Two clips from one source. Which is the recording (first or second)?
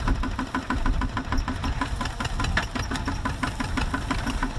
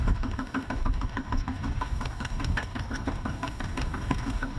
first